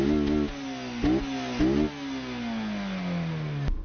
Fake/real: real